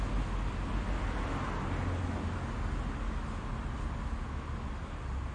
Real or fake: real